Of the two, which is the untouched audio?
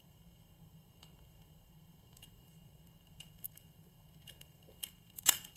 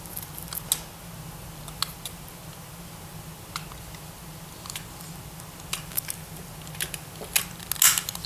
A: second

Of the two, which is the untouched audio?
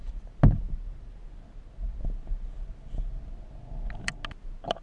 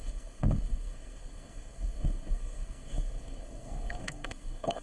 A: first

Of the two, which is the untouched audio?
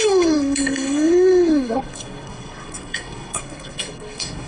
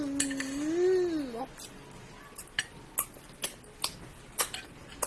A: second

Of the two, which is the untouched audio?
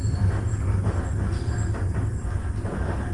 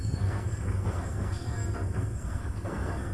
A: first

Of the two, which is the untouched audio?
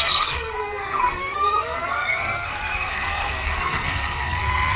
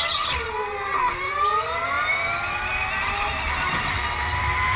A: second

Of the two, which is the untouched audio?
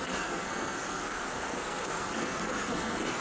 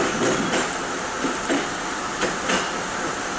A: second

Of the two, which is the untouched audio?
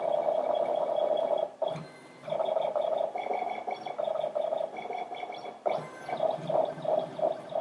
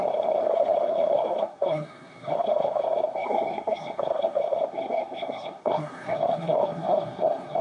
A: first